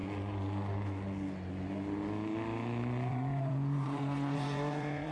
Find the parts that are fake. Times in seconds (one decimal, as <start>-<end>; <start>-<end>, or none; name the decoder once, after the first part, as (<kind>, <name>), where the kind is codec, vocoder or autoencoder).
3.1-5.1 (vocoder, Vocos)